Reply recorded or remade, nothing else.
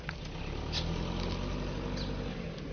recorded